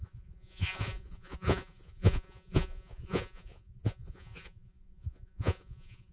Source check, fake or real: fake